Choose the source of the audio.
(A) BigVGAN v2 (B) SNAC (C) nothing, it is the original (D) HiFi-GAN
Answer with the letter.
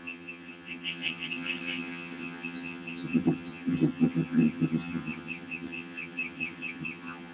D